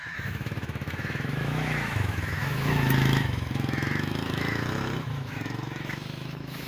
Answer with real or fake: fake